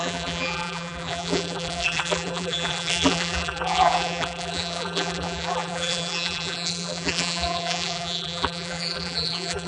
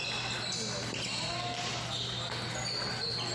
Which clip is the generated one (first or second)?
first